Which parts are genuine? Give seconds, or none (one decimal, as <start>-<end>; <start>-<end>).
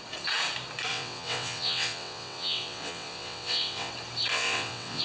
0.0-0.9; 3.9-4.3